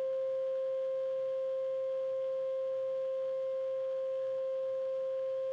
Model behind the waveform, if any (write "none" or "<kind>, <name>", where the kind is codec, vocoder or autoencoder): autoencoder, DAC-VAE